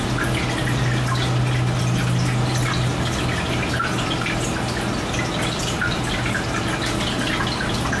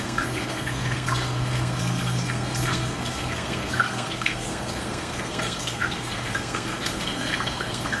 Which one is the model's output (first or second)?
second